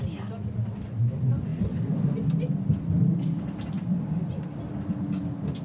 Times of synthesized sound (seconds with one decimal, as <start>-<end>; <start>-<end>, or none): none